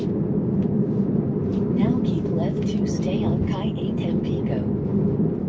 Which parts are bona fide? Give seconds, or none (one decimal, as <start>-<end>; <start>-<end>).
0.0-1.5; 2.3-5.5

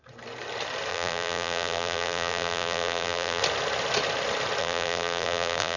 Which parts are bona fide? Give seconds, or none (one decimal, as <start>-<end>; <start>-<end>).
0.0-0.9; 3.4-4.6

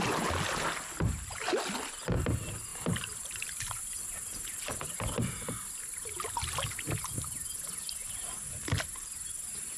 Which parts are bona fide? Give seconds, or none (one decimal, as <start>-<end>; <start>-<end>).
0.0-2.7; 5.2-9.8

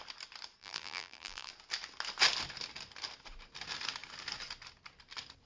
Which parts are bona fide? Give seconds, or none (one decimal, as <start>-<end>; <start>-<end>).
0.0-0.6; 1.5-5.5

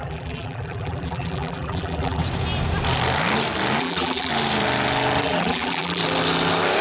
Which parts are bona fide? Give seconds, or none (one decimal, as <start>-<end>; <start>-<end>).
2.2-3.8; 4.3-5.2; 6.0-6.8

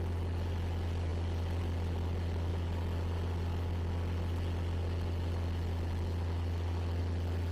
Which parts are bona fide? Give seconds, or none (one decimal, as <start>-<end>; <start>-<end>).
0.0-7.5

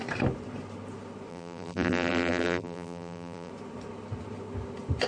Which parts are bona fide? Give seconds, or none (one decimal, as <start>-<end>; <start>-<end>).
0.0-1.3; 3.5-5.1